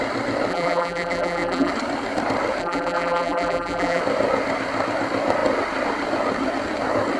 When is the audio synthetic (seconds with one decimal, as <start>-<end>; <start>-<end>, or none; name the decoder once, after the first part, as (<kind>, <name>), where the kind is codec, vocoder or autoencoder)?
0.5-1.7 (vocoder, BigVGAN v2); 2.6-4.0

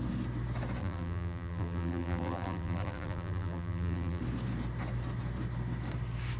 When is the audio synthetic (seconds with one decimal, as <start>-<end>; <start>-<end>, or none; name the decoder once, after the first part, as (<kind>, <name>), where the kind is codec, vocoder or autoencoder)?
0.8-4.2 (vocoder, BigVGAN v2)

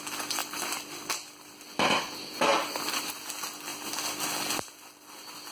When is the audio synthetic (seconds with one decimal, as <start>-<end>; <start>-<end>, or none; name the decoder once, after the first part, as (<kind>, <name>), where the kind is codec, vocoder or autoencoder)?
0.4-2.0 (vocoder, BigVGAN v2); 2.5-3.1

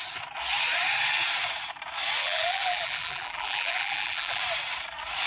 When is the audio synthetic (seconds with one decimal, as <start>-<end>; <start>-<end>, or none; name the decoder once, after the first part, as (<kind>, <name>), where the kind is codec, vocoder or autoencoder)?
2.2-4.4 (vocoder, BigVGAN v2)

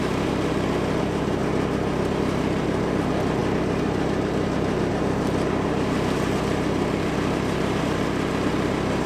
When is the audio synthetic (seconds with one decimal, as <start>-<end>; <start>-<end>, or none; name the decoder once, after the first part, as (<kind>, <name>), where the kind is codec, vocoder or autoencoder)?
0.0-1.4 (vocoder, BigVGAN v2); 2.2-9.1